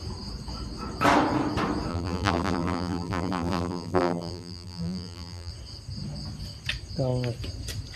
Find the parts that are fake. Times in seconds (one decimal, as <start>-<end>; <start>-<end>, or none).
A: 1.9-5.5